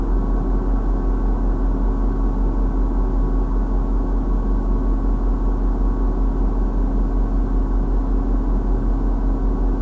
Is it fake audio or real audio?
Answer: real